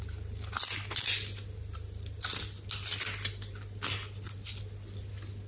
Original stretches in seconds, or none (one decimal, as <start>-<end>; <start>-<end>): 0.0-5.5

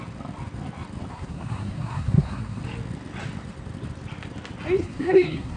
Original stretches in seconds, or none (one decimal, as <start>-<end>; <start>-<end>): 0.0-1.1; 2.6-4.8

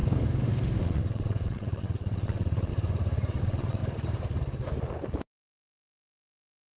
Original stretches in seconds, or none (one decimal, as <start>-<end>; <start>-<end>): 0.0-0.8; 2.7-3.4; 3.8-6.8